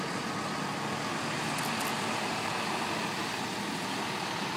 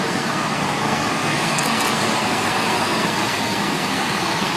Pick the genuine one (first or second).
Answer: first